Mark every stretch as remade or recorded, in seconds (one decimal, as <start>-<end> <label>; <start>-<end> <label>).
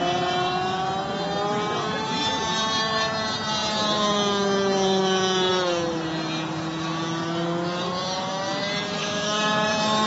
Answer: 0.0-9.0 recorded; 9.0-9.7 remade; 9.7-10.1 recorded